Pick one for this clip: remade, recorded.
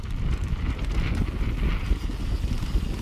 recorded